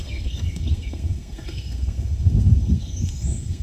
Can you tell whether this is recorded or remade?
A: remade